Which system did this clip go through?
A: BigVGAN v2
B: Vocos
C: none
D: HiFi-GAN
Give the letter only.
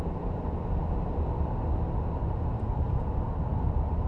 C